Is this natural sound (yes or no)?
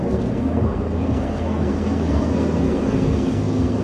no